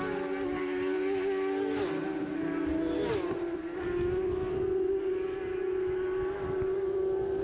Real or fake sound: real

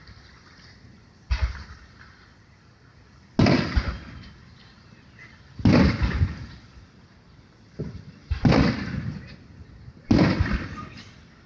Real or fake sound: real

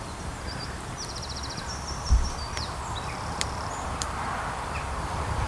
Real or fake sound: fake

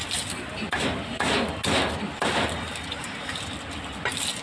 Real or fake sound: real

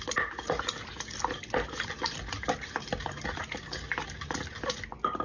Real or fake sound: real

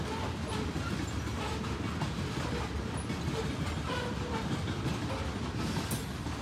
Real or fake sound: real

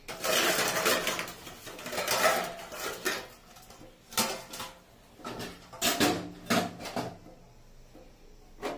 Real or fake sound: real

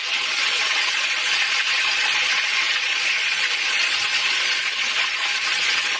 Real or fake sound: fake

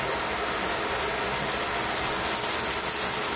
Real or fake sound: real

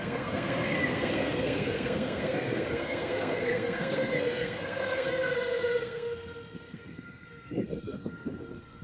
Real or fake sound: fake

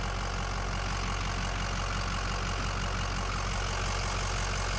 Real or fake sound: real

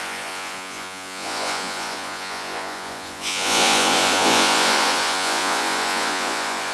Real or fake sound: fake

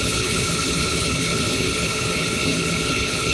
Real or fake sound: fake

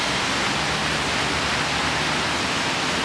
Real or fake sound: real